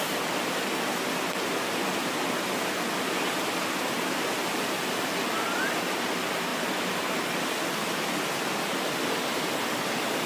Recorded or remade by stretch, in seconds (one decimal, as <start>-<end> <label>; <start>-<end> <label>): 0.0-10.3 recorded